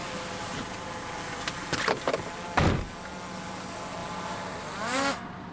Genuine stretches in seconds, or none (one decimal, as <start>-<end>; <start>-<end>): 0.0-4.0

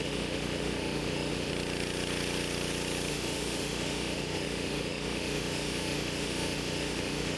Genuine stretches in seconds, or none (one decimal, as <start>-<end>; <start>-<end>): 1.5-3.1

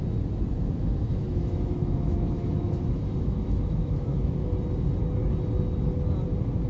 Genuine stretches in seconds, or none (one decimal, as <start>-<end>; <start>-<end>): 0.0-0.5; 4.5-6.7

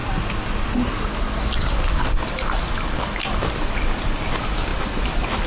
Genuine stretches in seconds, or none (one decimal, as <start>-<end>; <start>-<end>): 0.0-5.5